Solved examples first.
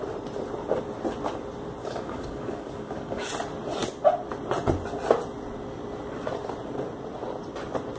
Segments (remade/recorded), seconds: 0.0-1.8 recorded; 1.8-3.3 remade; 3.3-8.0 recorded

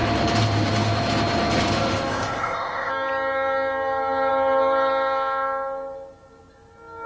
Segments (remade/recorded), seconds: 0.0-2.1 recorded; 2.1-2.9 remade; 2.9-7.1 recorded

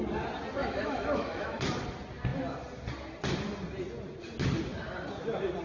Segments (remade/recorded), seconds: 0.0-0.6 recorded; 0.6-1.6 remade; 1.6-5.6 recorded

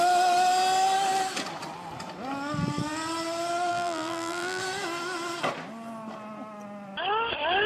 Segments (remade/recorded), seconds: 0.0-3.7 recorded; 3.7-4.6 remade; 4.6-7.7 recorded